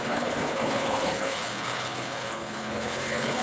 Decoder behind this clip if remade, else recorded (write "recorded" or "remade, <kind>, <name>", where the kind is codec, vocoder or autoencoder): remade, codec, HILCodec